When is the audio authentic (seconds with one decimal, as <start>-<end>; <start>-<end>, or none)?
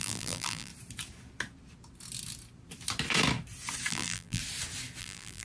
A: 0.7-3.9; 4.4-5.0